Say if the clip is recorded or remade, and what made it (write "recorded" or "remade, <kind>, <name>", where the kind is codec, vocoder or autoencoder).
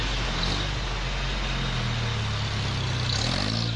recorded